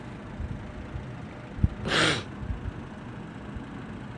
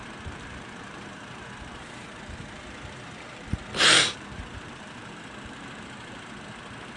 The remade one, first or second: second